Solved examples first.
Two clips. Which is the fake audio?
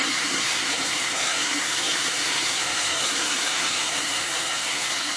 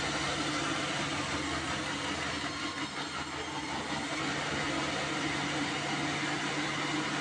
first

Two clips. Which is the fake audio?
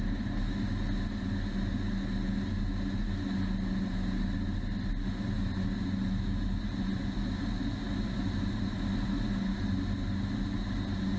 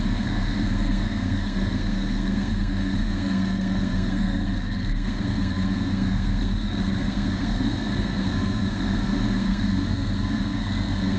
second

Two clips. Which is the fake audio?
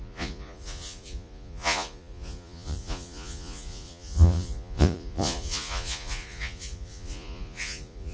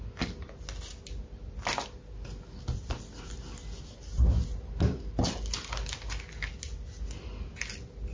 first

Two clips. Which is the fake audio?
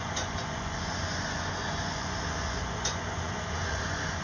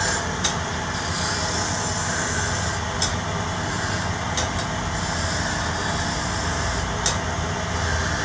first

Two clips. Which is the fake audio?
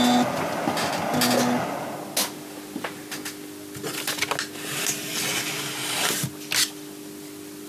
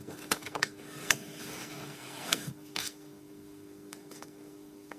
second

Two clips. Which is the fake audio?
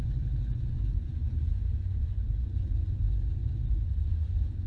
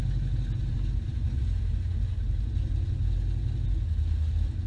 first